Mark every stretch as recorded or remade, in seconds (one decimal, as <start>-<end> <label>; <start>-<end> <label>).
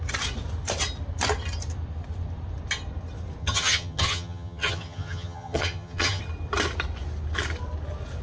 0.0-3.4 recorded; 3.4-6.2 remade; 6.2-8.2 recorded